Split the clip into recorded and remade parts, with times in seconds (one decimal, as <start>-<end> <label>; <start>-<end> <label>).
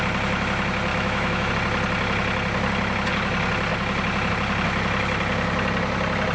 0.0-0.9 recorded; 0.9-1.5 remade; 1.5-6.3 recorded